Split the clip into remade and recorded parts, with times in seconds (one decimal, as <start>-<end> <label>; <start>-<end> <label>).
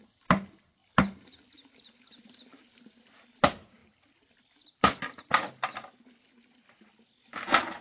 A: 0.0-3.8 recorded; 3.8-5.0 remade; 5.0-7.8 recorded